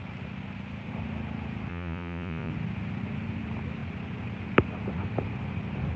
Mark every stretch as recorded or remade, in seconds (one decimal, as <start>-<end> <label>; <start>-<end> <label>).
0.0-1.7 recorded; 1.7-2.5 remade; 2.5-6.0 recorded